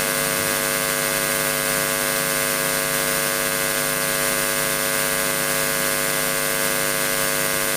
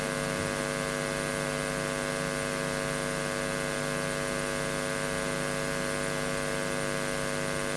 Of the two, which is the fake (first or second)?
second